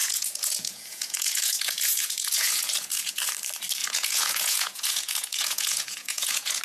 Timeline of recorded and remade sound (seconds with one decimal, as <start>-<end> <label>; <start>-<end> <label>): 0.0-3.2 remade; 3.2-3.8 recorded; 3.8-6.6 remade